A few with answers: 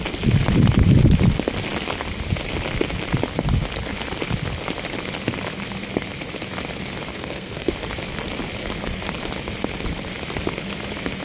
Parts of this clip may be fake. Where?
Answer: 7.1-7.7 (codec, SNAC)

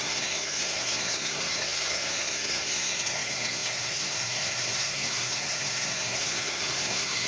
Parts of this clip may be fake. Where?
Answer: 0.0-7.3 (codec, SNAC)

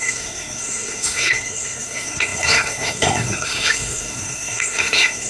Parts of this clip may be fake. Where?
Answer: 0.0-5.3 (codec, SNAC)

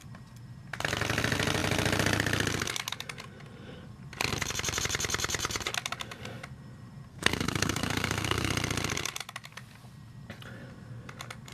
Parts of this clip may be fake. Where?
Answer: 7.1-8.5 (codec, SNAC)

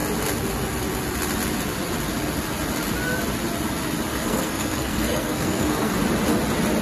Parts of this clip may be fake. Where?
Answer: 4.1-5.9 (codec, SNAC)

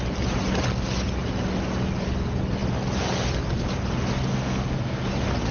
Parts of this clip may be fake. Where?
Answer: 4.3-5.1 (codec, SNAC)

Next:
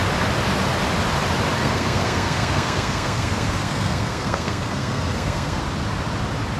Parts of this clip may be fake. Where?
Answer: 1.6-5.6 (codec, SNAC)

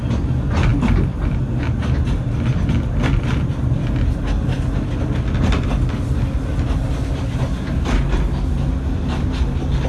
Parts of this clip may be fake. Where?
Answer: none